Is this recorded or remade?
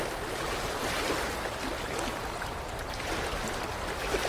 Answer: recorded